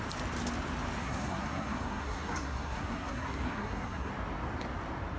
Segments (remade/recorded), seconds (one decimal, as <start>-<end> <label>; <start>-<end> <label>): 0.0-1.0 recorded; 1.0-4.1 remade; 4.1-5.2 recorded